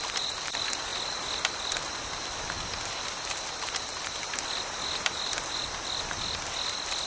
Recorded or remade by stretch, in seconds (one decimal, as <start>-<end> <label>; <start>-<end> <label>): 0.0-7.1 recorded